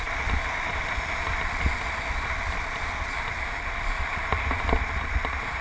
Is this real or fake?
real